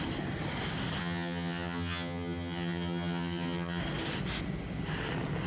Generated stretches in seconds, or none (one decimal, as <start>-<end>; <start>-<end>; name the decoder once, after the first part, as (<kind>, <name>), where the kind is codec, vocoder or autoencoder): 1.0-3.8 (vocoder, HiFi-GAN)